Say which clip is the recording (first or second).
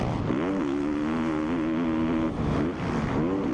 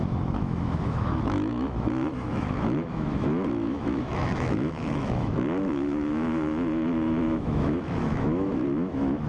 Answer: first